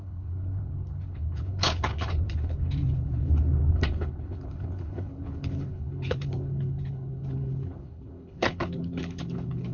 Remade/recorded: remade